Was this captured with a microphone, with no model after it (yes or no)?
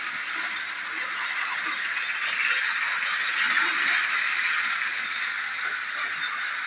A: yes